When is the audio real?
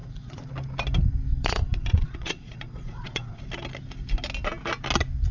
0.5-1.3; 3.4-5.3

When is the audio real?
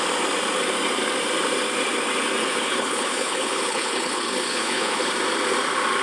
0.0-2.4; 5.0-6.0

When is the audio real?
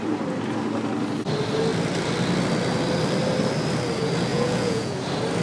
0.0-4.3; 5.0-5.4